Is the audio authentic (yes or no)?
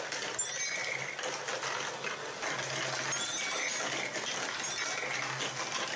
yes